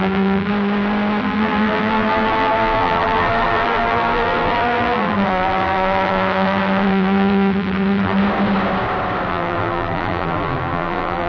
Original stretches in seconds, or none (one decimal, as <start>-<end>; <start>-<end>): 0.5-1.2; 8.2-9.3